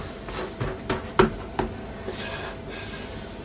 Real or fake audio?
real